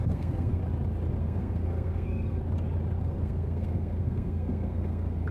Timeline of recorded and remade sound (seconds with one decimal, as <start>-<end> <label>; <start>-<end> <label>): 0.0-0.6 remade; 0.6-1.2 recorded; 1.2-2.4 remade; 2.4-3.0 recorded; 3.0-5.3 remade

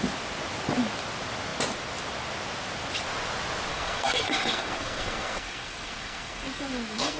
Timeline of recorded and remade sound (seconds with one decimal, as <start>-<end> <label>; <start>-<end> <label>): 0.0-3.7 recorded; 3.7-7.2 remade

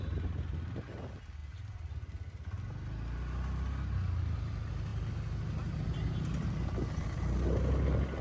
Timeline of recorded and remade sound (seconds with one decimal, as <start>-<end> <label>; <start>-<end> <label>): 0.0-8.2 recorded

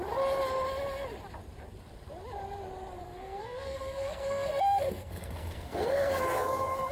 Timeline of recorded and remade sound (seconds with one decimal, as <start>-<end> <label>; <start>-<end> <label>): 0.0-3.0 recorded; 3.0-6.9 remade